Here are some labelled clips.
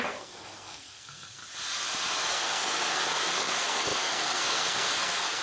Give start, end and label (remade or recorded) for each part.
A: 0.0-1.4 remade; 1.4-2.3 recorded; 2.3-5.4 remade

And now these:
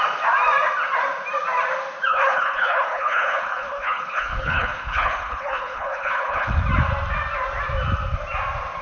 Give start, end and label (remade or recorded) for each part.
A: 0.0-2.1 recorded; 2.1-6.6 remade; 6.6-8.8 recorded

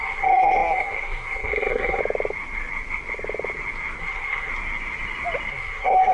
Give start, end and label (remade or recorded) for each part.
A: 0.0-2.0 remade; 2.0-4.0 recorded; 4.0-4.5 remade; 4.5-5.5 recorded; 5.5-6.1 remade

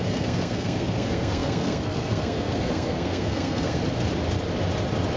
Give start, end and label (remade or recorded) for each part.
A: 0.0-3.8 remade; 3.8-5.2 recorded

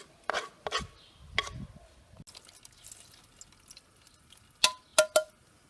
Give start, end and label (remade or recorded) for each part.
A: 0.0-5.7 recorded